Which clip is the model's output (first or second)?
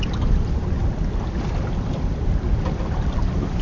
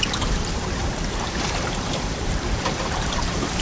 second